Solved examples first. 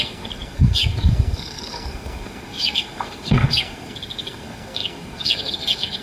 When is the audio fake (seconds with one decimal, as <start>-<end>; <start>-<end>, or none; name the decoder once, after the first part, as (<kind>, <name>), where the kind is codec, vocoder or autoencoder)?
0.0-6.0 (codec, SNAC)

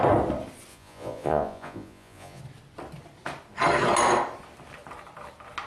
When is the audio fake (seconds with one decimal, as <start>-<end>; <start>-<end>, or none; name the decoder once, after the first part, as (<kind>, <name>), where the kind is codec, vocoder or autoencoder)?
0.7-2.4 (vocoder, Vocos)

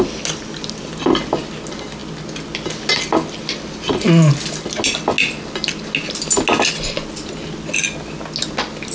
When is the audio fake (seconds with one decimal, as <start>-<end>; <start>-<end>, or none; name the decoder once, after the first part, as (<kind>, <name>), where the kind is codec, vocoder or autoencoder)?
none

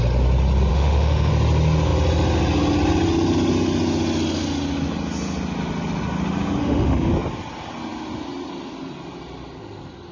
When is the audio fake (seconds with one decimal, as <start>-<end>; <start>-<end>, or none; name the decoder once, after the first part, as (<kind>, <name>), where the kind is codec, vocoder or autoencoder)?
0.7-1.3 (autoencoder, DAC-VAE); 6.6-7.1